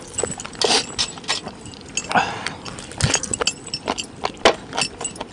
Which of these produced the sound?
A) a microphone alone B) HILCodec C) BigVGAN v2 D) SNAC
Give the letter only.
A